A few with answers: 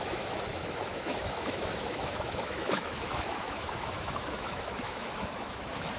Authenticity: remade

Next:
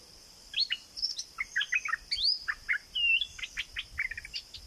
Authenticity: recorded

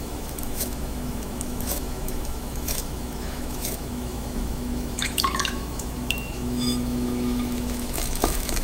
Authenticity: remade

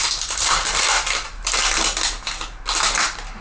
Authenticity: recorded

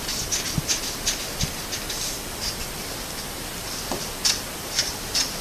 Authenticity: recorded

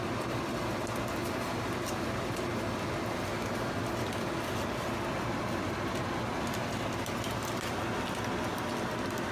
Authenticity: recorded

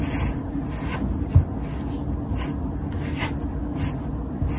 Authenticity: recorded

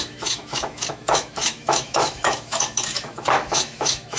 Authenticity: remade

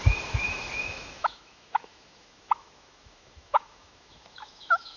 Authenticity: remade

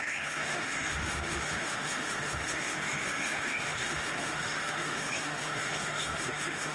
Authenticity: remade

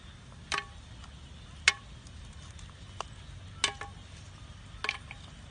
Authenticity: recorded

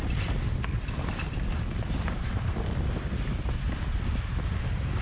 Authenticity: recorded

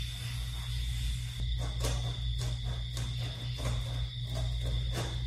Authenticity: recorded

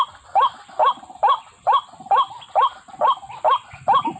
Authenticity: recorded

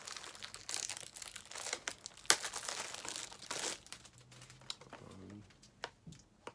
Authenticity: recorded